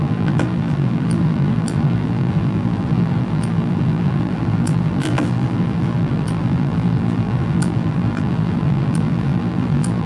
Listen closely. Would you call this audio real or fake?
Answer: fake